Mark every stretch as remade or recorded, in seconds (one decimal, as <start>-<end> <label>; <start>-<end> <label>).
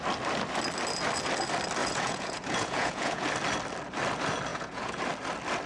0.0-1.8 recorded; 1.8-3.2 remade; 3.2-4.5 recorded; 4.5-5.0 remade; 5.0-5.7 recorded